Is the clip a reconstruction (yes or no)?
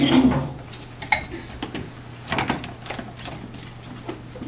no